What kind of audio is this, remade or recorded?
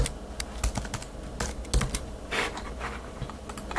recorded